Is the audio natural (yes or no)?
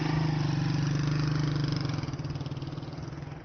yes